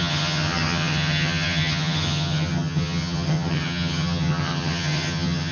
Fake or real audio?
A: fake